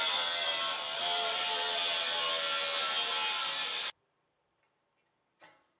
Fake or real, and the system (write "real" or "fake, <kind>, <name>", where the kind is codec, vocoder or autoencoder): real